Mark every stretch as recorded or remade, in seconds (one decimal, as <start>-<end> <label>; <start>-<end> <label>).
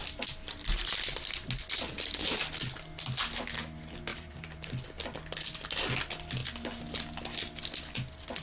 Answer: 0.0-4.1 recorded; 4.1-4.7 remade; 4.7-8.4 recorded